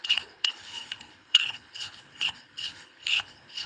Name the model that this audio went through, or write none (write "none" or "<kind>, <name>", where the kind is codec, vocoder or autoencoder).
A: codec, HILCodec